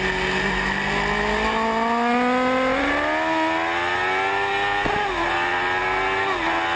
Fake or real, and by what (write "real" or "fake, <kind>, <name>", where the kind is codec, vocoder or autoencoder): real